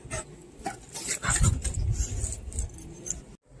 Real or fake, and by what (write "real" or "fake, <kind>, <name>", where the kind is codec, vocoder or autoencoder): real